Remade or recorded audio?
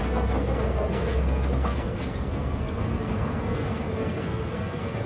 remade